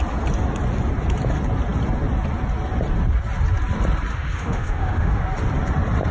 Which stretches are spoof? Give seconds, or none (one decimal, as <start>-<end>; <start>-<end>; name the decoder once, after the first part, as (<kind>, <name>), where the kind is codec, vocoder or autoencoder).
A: 4.1-5.2 (autoencoder, DAC-VAE)